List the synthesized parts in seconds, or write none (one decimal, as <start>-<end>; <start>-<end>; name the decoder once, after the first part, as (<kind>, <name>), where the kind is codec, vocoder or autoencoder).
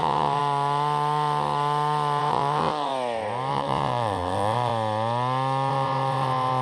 0.0-0.4 (vocoder, WaveNeXt); 2.2-2.9; 3.5-4.7; 5.7-6.6